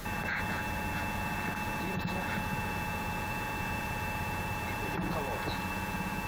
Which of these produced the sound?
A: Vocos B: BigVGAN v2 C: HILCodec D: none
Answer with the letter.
A